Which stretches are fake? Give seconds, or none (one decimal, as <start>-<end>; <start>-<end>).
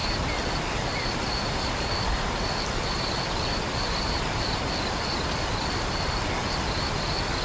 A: 0.0-7.4